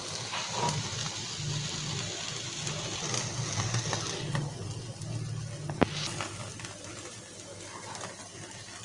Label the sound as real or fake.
real